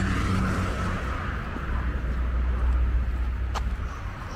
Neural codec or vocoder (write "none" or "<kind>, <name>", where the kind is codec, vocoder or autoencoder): none